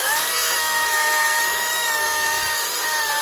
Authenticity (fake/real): fake